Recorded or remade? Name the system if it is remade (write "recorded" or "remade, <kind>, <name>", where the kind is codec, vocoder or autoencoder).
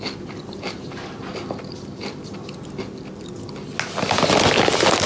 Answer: recorded